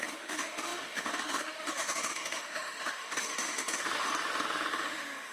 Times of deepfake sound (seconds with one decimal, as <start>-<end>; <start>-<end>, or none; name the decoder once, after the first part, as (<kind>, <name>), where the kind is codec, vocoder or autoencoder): 0.0-4.1 (autoencoder, DAC-VAE); 4.7-5.3